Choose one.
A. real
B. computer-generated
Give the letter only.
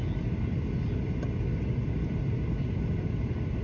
A